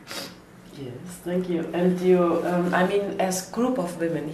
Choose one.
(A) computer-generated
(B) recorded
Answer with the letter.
B